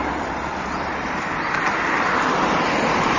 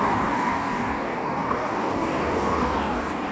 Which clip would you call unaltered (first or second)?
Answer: first